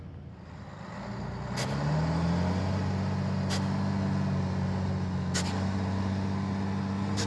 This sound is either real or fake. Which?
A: real